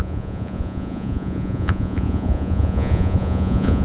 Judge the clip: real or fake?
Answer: fake